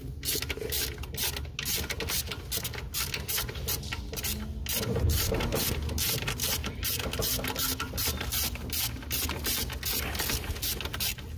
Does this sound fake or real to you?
real